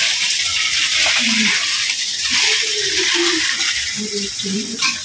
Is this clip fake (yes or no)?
yes